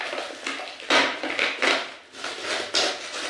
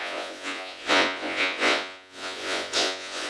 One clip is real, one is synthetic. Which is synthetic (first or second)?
second